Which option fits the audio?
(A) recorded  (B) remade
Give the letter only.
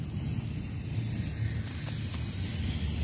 A